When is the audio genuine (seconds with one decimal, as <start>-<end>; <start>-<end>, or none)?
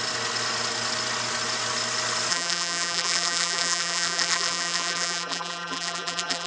0.0-2.3